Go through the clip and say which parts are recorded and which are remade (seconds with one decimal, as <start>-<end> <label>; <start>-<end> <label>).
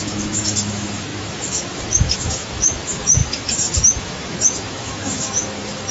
0.0-5.9 remade